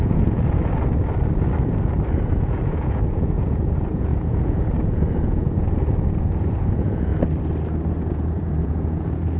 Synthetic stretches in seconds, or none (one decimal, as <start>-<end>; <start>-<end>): 0.0-0.6; 2.4-7.1; 8.0-9.4